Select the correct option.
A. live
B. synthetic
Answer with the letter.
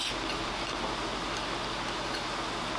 A